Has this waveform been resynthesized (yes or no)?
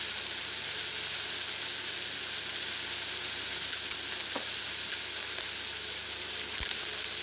no